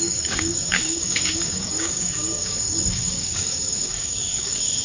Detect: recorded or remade remade